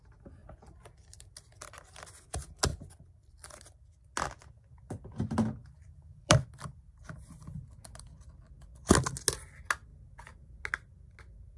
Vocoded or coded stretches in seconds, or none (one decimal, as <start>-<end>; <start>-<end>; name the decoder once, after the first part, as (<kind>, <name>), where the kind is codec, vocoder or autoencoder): 0.4-1.7 (vocoder, BigVGAN v2); 2.7-4.4; 5.6-6.5